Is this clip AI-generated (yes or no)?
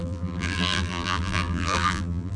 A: yes